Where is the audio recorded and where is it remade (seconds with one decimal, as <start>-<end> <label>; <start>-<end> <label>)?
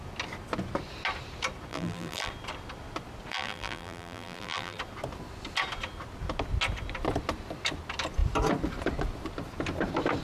0.0-1.7 recorded; 1.7-2.3 remade; 2.3-3.3 recorded; 3.3-4.8 remade; 4.8-10.2 recorded